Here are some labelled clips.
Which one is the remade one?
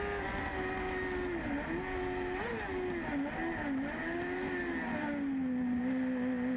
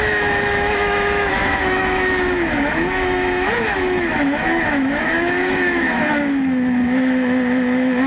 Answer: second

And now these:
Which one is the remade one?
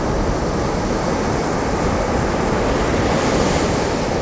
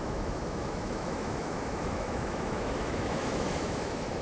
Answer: second